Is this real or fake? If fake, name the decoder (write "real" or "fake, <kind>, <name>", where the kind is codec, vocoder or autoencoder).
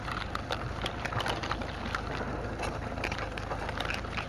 real